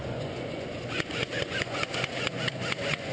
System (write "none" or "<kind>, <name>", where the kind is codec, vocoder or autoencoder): vocoder, Vocos